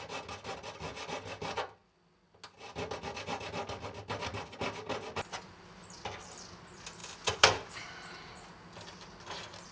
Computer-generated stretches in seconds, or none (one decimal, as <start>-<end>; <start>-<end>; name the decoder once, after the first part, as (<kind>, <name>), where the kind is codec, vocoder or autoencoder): none